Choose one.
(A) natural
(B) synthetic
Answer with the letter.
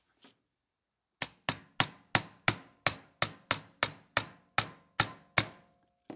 A